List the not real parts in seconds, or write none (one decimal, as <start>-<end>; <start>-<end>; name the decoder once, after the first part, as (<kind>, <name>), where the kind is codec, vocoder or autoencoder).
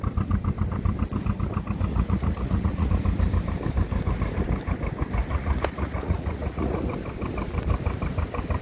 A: 1.9-2.9 (vocoder, Vocos); 5.2-6.8